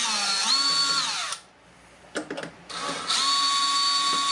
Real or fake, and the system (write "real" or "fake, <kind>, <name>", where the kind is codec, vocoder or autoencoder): real